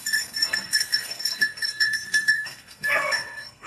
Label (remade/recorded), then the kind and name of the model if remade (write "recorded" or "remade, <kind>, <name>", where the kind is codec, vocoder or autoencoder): remade, codec, SNAC